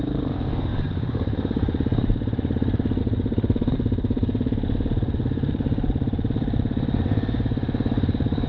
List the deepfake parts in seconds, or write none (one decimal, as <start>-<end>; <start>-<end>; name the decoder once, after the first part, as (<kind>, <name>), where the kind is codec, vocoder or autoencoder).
0.0-8.5 (vocoder, BigVGAN v2)